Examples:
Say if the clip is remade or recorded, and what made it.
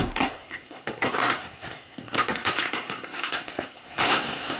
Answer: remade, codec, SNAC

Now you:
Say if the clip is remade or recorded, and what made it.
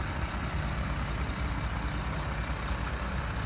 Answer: recorded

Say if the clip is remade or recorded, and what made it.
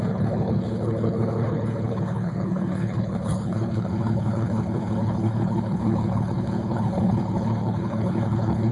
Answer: remade, codec, HILCodec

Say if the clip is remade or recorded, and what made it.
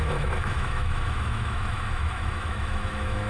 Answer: remade, autoencoder, DAC-VAE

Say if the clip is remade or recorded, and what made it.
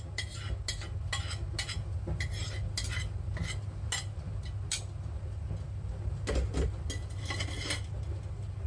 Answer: recorded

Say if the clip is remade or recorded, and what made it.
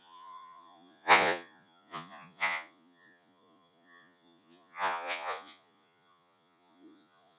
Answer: remade, vocoder, Vocos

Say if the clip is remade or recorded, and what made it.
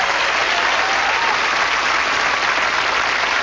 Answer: recorded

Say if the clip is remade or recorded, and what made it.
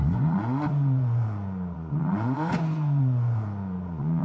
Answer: remade, vocoder, Vocos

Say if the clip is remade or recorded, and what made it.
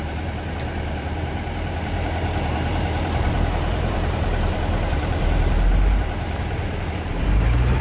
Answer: remade, vocoder, BigVGAN v2